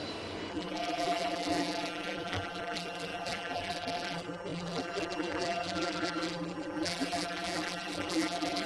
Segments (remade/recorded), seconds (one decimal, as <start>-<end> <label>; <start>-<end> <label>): 0.0-0.5 recorded; 0.5-8.7 remade